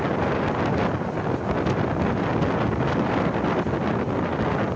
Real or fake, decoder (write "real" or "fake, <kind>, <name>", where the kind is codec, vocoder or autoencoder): real